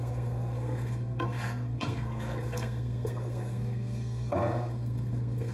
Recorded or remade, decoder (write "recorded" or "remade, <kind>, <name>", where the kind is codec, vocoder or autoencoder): remade, codec, SNAC